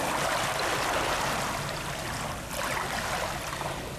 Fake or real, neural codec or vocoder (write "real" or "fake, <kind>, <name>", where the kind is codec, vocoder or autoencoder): real